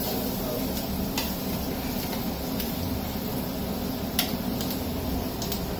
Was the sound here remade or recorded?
recorded